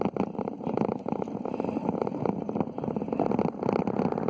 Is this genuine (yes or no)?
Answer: yes